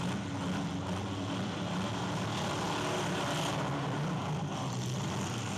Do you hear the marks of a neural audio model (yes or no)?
no